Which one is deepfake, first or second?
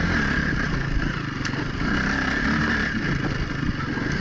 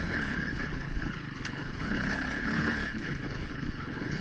second